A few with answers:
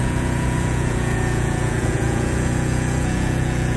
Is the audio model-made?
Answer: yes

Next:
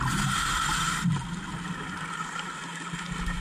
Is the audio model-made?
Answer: no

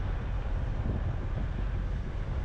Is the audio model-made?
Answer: no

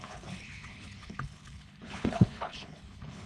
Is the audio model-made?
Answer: yes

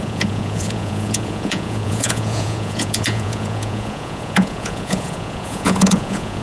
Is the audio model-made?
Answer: yes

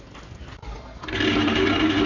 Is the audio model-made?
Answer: no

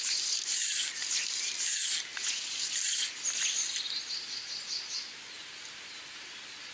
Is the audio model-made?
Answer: no